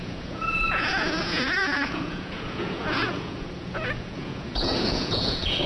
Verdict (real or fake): fake